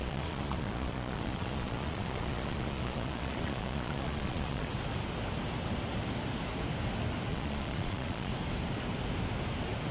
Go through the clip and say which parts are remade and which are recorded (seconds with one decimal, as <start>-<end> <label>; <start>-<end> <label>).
0.0-4.7 remade; 4.7-7.3 recorded; 7.3-8.3 remade; 8.3-9.9 recorded